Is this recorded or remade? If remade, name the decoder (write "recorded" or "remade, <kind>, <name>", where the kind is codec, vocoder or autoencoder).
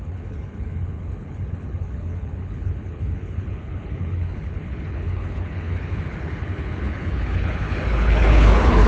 remade, codec, HILCodec